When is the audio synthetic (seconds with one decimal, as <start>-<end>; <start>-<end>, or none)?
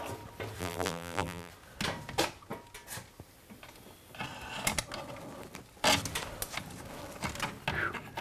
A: 0.6-1.5